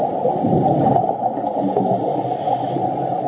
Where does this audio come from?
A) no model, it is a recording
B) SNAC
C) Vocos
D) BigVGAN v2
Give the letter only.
A